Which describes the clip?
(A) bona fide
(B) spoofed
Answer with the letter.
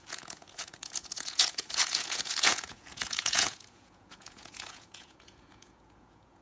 B